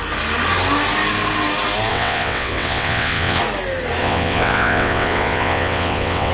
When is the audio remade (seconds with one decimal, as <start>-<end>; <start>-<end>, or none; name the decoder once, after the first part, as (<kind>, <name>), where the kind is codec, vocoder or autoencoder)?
1.9-3.4 (vocoder, WaveNeXt); 4.0-6.3